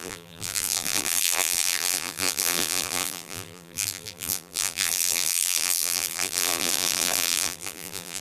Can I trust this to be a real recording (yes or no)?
no